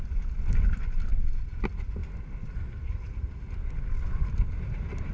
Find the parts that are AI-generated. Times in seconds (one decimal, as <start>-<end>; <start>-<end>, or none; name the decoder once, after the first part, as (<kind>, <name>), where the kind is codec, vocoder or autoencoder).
1.1-1.6 (vocoder, Vocos)